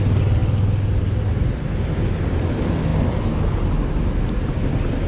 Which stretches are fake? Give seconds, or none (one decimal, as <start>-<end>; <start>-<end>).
none